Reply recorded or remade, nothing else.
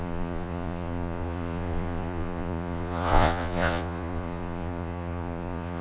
remade